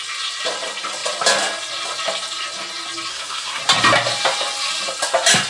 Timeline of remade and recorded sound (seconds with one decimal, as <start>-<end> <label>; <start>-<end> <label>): 0.0-3.1 recorded; 3.1-3.6 remade; 3.6-5.5 recorded